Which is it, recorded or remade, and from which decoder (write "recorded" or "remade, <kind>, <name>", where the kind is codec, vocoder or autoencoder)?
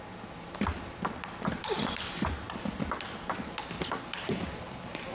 recorded